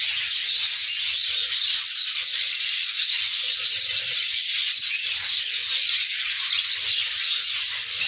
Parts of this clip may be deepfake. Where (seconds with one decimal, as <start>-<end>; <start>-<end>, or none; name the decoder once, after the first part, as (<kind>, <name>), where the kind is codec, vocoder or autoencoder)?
2.3-2.9 (vocoder, Vocos)